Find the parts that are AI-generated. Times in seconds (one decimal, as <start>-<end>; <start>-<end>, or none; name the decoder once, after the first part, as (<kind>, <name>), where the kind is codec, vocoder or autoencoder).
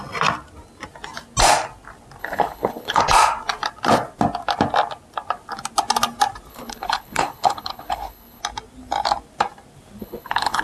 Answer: 2.2-3.0 (codec, HILCodec); 6.5-8.4; 10.0-10.6